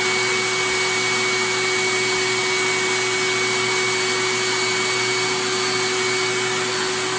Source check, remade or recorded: recorded